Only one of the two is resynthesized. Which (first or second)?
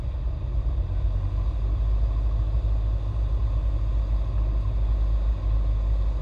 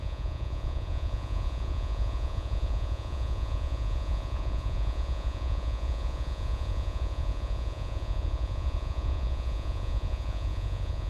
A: second